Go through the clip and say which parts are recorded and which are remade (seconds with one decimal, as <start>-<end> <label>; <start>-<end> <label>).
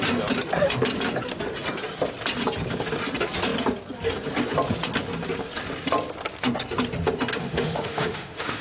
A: 0.0-7.4 recorded; 7.4-8.6 remade